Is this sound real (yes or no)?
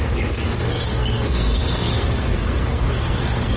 no